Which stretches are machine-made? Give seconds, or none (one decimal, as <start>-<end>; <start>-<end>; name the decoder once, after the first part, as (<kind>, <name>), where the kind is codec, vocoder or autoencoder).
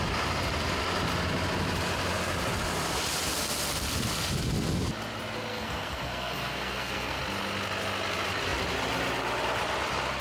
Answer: 5.5-7.2 (codec, SNAC)